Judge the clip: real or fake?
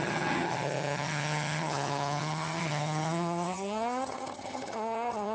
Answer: fake